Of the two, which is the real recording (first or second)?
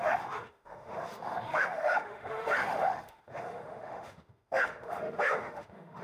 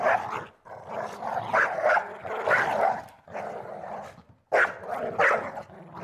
second